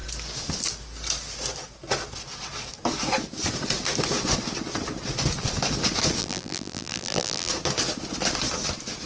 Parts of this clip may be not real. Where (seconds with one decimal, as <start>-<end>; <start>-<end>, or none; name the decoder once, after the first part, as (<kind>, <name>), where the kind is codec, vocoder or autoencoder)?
6.2-7.5 (vocoder, BigVGAN v2)